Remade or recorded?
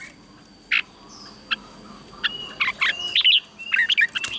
recorded